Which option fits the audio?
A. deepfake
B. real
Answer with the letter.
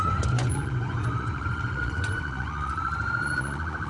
A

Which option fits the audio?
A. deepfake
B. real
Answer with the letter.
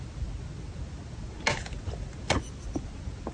B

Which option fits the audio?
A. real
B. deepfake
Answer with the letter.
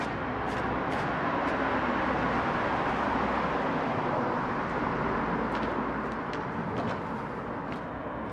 A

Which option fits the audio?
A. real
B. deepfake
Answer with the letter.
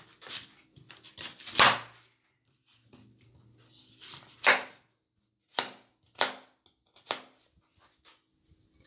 A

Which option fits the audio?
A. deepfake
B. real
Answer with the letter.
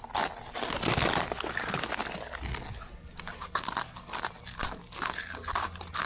B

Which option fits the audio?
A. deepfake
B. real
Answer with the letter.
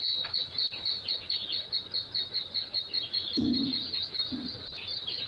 B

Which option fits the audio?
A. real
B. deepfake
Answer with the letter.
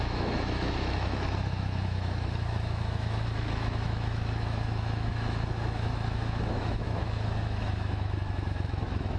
B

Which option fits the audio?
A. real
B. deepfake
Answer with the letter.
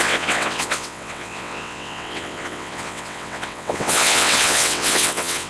B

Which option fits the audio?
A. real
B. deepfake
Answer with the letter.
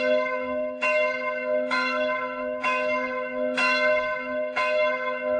B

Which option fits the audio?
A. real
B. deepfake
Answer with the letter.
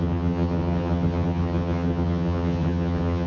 B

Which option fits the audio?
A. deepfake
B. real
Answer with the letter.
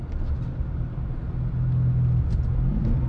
B